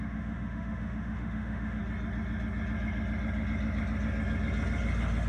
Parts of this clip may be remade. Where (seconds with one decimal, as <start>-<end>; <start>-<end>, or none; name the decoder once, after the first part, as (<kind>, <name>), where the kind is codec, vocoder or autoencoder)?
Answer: 0.0-1.8 (autoencoder, DAC-VAE)